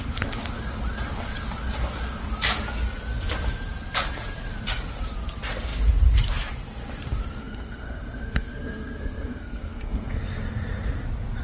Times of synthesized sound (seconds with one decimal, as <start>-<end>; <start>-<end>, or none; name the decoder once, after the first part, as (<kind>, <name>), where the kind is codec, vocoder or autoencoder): 7.4-10.2 (codec, SNAC)